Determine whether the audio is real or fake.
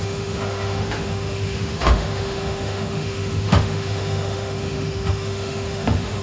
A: fake